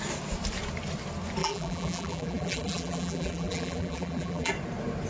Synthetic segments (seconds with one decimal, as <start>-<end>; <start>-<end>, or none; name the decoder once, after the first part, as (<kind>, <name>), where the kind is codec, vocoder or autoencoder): 1.4-4.5 (vocoder, BigVGAN v2)